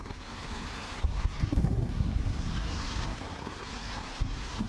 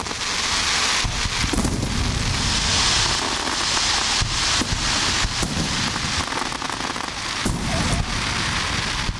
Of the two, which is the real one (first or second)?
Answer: second